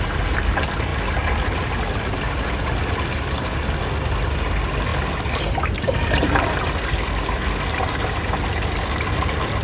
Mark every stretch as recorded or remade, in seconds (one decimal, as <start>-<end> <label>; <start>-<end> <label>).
0.0-9.6 recorded